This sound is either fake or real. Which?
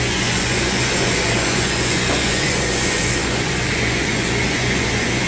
fake